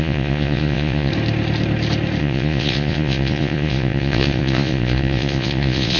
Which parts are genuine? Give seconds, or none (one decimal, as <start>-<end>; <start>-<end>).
1.1-2.2